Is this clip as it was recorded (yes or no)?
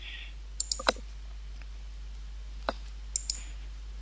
yes